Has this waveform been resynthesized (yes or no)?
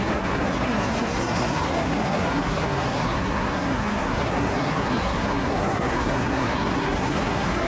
yes